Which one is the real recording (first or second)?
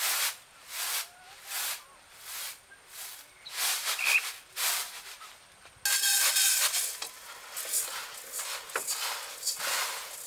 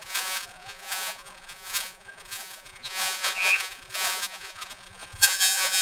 first